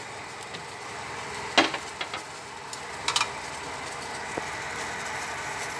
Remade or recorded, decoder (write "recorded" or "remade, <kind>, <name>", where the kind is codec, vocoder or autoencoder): recorded